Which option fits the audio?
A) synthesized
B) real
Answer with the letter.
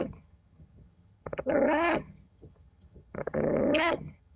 A